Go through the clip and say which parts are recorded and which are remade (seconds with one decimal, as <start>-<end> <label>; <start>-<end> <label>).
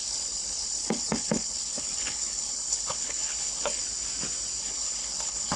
0.0-3.8 remade; 3.8-4.6 recorded; 4.6-5.6 remade